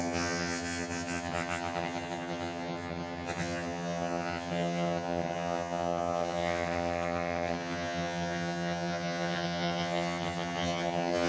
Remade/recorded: remade